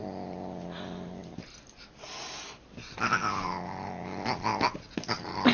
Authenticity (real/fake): real